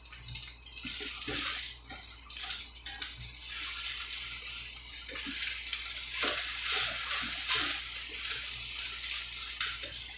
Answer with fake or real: real